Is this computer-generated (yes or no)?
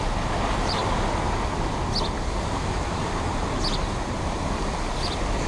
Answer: no